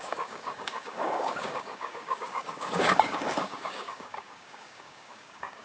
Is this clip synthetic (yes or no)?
yes